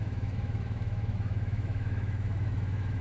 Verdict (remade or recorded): remade